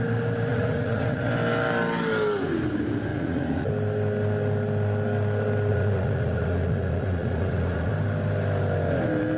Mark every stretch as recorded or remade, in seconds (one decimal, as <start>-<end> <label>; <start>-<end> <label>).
0.0-0.5 recorded; 0.5-1.3 remade; 1.3-3.1 recorded; 3.1-3.7 remade; 3.7-5.7 recorded; 5.7-7.9 remade; 7.9-9.4 recorded